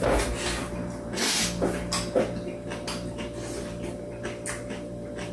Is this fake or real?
real